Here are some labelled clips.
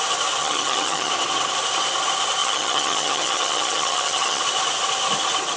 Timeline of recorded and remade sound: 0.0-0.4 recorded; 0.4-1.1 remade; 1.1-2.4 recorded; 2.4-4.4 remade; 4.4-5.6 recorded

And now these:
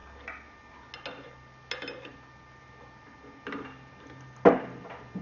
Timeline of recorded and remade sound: 0.0-5.2 recorded

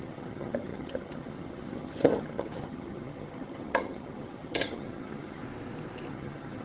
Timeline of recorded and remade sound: 0.0-5.4 remade; 5.4-6.1 recorded; 6.1-6.6 remade

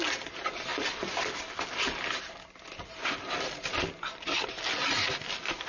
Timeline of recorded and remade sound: 0.0-5.7 recorded

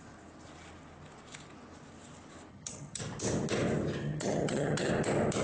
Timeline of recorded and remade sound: 0.0-2.5 recorded; 2.5-3.0 remade; 3.0-4.0 recorded; 4.0-4.9 remade; 4.9-5.4 recorded

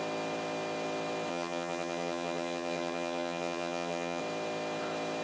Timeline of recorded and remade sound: 0.0-1.3 recorded; 1.3-4.2 remade; 4.2-5.2 recorded